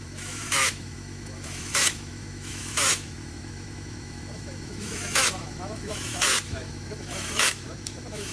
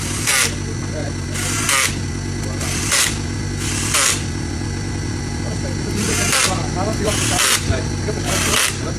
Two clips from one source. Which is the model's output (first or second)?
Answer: first